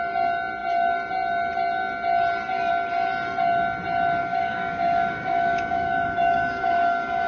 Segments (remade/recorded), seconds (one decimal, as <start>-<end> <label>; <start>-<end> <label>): 0.0-4.2 recorded; 4.2-7.3 remade